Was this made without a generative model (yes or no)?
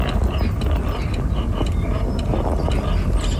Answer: yes